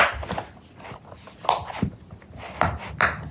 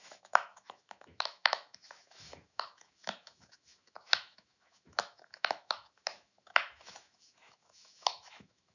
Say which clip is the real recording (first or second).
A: first